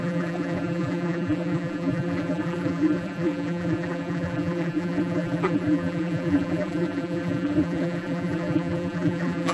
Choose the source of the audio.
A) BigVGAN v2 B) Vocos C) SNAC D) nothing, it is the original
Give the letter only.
A